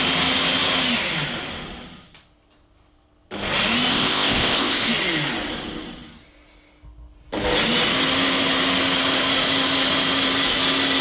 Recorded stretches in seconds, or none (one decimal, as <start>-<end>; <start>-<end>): 0.0-3.9; 4.9-11.0